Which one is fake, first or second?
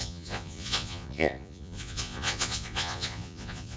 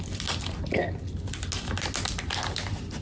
first